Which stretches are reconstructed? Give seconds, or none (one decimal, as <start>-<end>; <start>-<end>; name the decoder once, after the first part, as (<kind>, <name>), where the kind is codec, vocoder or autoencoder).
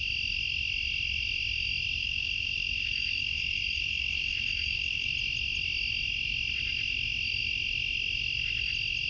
2.0-5.1 (autoencoder, DAC-VAE)